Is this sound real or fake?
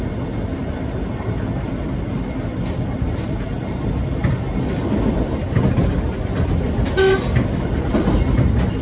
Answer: fake